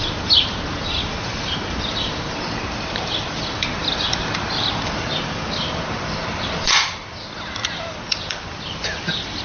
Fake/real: fake